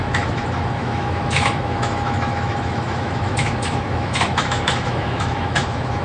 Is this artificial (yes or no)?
yes